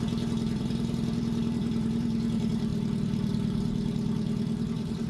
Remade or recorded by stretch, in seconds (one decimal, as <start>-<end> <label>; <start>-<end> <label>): 0.0-5.1 remade